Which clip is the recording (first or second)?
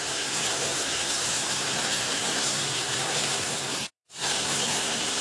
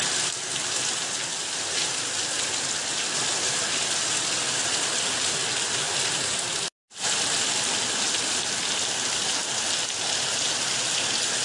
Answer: second